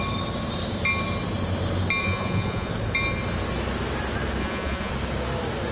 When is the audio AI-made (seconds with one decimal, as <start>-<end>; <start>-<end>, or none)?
2.0-2.7; 4.4-4.9